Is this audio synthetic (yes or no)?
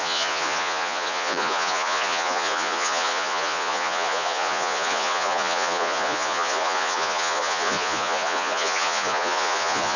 yes